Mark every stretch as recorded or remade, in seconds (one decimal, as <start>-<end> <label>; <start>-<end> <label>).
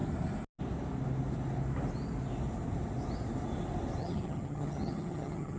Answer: 0.0-4.0 recorded; 4.0-5.6 remade